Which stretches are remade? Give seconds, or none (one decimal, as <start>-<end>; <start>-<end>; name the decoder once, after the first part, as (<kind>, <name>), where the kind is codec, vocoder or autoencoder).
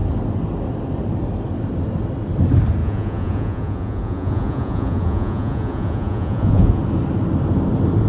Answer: 2.8-6.8 (vocoder, Vocos)